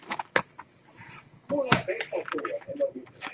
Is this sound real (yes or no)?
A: yes